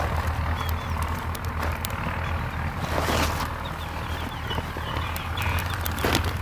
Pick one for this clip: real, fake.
real